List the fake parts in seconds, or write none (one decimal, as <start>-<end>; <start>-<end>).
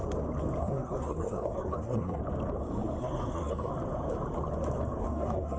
0.6-2.2; 3.0-3.7; 5.0-5.6